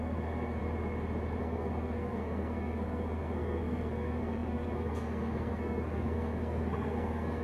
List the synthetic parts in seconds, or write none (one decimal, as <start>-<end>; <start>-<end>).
0.0-0.6; 1.4-7.4